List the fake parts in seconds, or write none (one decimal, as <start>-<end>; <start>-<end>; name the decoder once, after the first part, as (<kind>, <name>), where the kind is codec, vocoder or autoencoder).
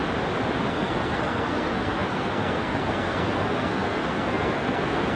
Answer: 0.7-5.2 (codec, SNAC)